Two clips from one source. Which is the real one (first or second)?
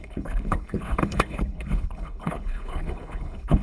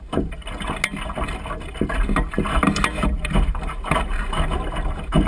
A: second